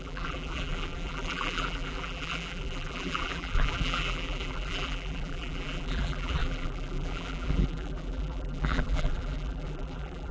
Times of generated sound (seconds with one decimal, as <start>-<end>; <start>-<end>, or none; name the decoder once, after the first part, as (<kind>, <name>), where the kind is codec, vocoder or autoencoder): 0.0-10.3 (vocoder, BigVGAN v2)